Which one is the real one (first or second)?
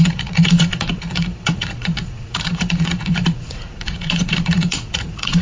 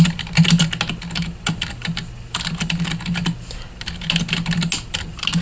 second